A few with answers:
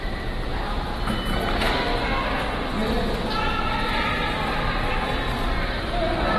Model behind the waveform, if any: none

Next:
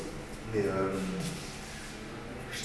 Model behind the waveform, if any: none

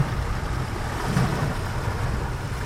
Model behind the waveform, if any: none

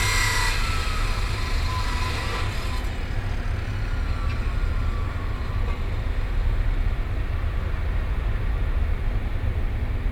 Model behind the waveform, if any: none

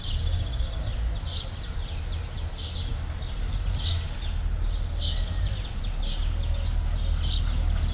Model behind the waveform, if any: none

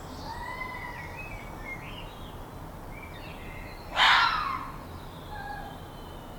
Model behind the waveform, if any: none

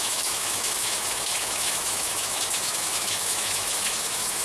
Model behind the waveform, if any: autoencoder, DAC-VAE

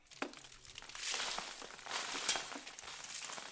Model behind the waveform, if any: none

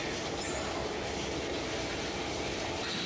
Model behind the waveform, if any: none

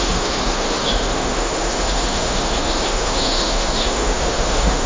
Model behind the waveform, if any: autoencoder, DAC-VAE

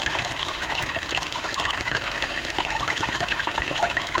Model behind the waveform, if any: autoencoder, DAC-VAE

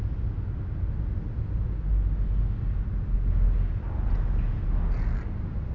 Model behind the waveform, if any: none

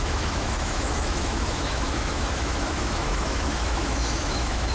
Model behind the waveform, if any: autoencoder, DAC-VAE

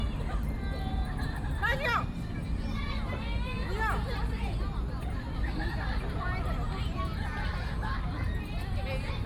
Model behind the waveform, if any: none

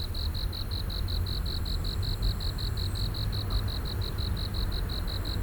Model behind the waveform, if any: none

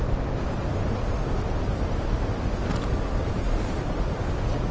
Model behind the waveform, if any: none